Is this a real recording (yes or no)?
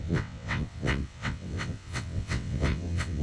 no